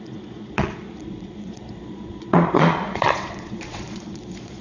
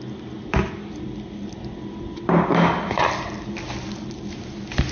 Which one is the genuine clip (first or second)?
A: second